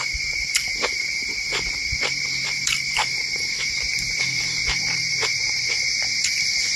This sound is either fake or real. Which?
fake